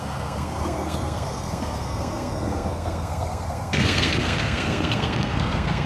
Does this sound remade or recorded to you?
remade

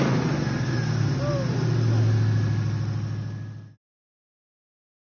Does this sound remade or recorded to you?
recorded